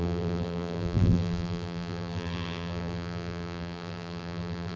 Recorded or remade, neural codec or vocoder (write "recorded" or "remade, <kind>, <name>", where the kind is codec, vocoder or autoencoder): remade, vocoder, BigVGAN v2